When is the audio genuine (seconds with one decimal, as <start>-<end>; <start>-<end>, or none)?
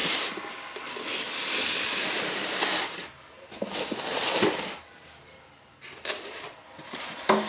none